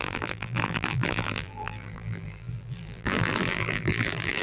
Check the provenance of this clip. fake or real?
fake